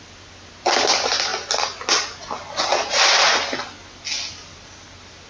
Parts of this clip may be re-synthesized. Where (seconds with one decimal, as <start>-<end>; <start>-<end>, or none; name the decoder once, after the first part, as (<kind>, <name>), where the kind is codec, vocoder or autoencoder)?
none